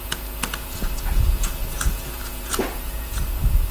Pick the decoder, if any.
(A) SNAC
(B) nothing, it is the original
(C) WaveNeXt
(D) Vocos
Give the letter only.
D